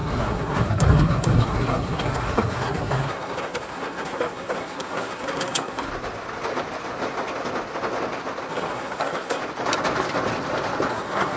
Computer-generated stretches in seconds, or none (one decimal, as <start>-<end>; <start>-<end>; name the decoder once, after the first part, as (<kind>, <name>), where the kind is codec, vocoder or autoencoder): 0.0-5.9 (codec, SNAC); 8.5-9.4; 10.9-11.4